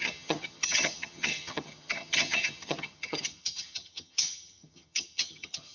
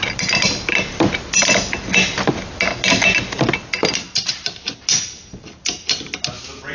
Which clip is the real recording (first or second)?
second